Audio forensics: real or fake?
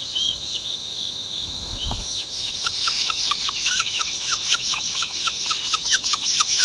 fake